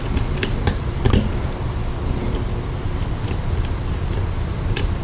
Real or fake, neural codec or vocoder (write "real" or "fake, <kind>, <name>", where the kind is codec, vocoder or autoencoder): real